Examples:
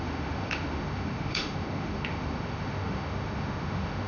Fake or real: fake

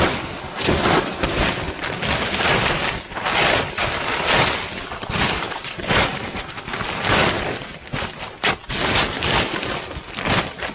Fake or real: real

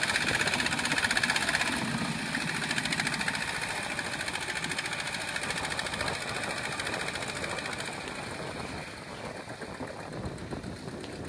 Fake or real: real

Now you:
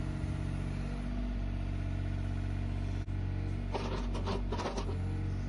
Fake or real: real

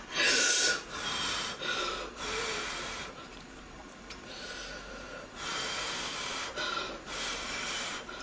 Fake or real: fake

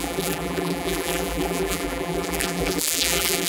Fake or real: fake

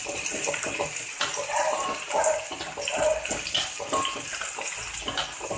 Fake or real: real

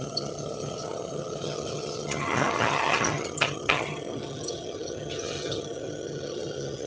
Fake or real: fake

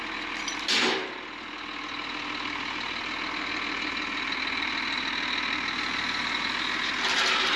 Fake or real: real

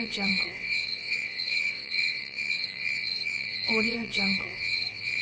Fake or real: fake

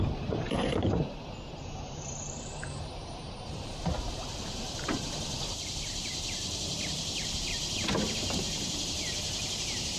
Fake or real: fake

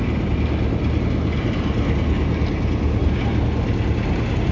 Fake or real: real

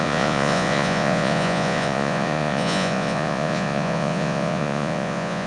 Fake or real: fake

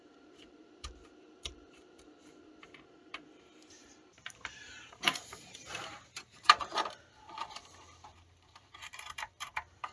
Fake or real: fake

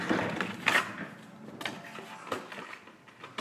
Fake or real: real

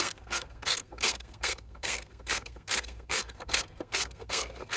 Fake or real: fake